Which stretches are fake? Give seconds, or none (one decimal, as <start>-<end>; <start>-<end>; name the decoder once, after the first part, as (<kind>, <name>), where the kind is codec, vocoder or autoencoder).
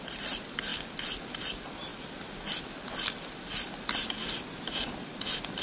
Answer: none